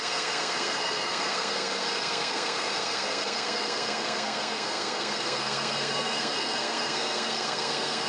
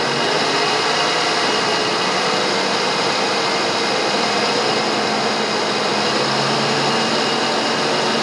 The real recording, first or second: second